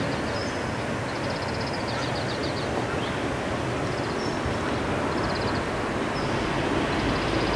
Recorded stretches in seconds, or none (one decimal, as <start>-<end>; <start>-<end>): 0.0-7.6